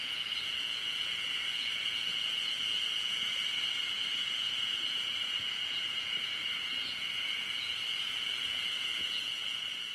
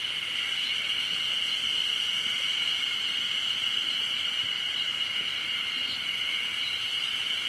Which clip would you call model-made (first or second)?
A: first